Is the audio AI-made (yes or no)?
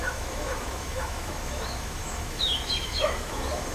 yes